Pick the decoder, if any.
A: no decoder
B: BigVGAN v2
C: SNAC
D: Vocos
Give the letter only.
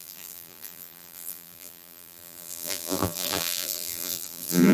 B